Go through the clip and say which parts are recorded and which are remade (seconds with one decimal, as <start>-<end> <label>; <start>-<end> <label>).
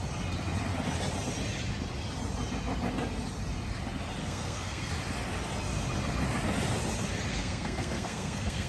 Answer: 0.0-4.2 recorded; 4.2-4.9 remade; 4.9-7.3 recorded; 7.3-8.7 remade